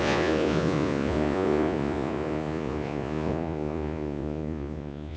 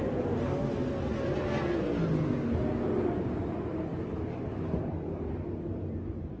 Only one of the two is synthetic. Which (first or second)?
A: first